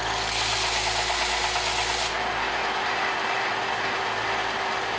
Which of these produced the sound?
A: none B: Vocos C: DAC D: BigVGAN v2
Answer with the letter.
A